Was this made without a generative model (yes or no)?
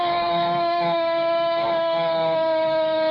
no